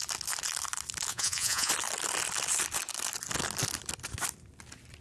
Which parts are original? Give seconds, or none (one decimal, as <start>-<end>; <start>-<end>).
0.0-1.1; 1.7-5.0